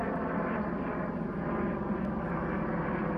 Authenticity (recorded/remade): recorded